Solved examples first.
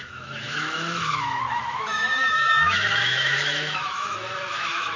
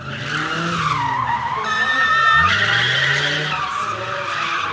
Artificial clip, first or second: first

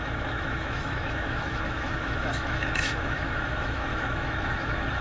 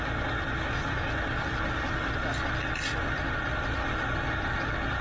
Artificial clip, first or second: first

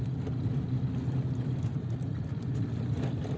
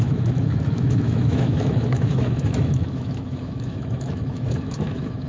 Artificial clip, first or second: second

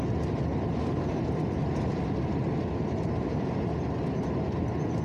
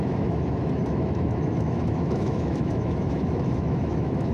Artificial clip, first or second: second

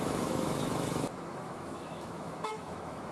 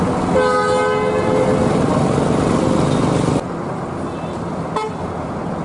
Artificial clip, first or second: first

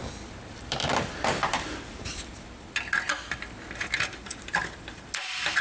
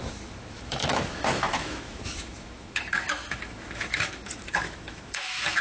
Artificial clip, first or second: second